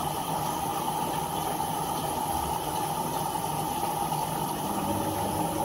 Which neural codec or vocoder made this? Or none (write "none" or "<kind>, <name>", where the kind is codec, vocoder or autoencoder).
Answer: none